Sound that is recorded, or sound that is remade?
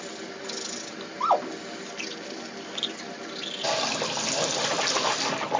recorded